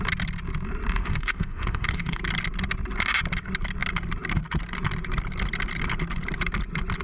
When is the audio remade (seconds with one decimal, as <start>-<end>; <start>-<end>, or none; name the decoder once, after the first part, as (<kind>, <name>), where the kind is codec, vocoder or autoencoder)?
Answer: 1.0-2.2 (autoencoder, DAC-VAE)